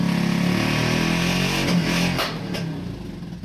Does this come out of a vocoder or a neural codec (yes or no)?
no